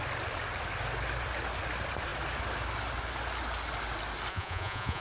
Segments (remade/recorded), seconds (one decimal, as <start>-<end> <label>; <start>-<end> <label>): 0.0-4.3 recorded; 4.3-5.0 remade